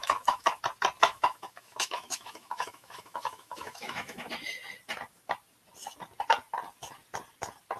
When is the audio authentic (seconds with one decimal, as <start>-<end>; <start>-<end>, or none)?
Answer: 0.6-1.0; 4.3-7.8

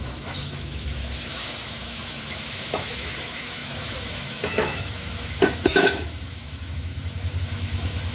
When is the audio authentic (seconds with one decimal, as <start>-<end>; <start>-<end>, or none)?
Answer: 6.9-7.4

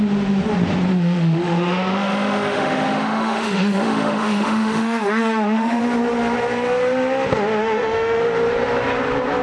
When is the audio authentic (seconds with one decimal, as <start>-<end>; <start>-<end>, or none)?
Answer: 0.0-0.9; 5.8-7.6; 8.2-9.4

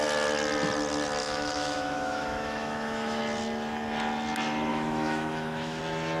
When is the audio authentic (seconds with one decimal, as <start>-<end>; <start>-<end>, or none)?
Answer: 0.0-1.2; 3.2-4.7; 5.8-6.2

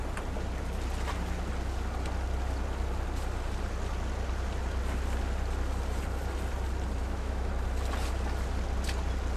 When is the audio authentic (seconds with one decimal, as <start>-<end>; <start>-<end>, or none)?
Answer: 0.0-7.0; 7.5-9.4

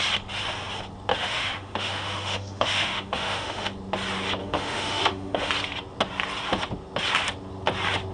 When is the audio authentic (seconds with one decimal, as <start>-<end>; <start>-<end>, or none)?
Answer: 0.0-1.1; 3.7-4.4; 5.5-8.1

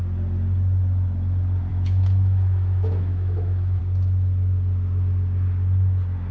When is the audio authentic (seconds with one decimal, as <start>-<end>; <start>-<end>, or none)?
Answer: 0.0-1.7; 3.8-6.3

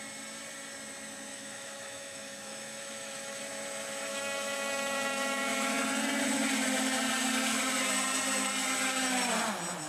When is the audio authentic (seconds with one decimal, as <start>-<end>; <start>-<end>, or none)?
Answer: 0.0-1.3; 3.4-4.1; 5.8-9.9